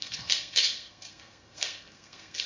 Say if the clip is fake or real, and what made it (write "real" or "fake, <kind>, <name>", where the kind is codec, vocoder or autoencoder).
fake, codec, SNAC